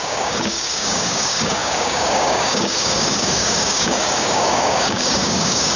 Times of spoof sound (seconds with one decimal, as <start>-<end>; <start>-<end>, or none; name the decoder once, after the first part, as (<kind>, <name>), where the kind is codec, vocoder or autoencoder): 0.0-5.8 (codec, DAC)